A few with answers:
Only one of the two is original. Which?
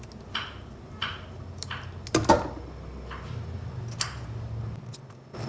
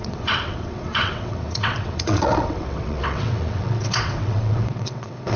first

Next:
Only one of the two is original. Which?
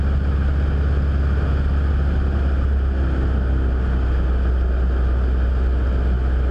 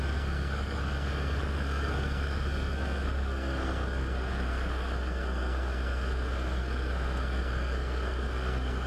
first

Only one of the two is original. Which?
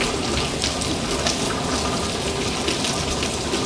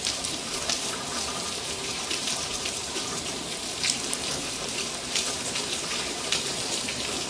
first